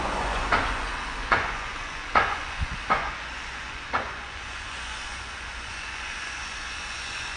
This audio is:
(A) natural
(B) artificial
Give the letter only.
B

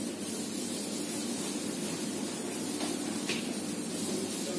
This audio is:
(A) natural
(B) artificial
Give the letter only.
A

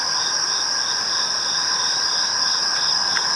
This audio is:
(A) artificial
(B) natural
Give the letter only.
B